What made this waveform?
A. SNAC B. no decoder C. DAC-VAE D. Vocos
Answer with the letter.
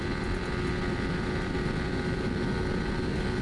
B